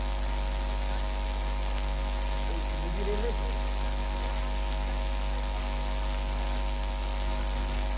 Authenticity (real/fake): real